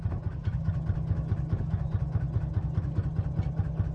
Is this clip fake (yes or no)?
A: no